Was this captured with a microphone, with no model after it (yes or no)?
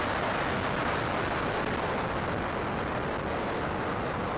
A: yes